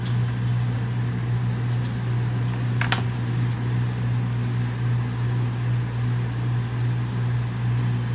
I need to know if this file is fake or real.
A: real